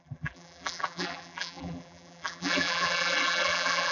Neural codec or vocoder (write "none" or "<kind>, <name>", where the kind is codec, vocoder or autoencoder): vocoder, BigVGAN v2